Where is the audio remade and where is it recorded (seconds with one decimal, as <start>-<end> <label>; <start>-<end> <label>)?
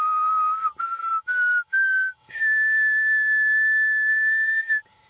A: 0.0-1.0 recorded; 1.0-4.1 remade; 4.1-5.1 recorded